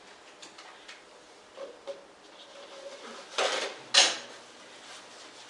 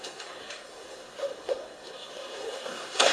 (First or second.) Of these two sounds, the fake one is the second